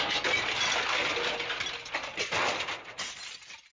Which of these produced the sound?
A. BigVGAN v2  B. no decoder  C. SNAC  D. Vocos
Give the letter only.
B